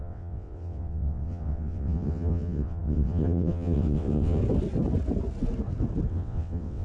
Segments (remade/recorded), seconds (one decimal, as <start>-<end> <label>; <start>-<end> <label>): 0.0-4.4 remade; 4.4-6.1 recorded; 6.1-6.8 remade